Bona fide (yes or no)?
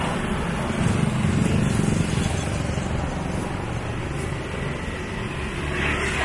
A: yes